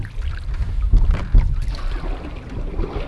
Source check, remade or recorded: recorded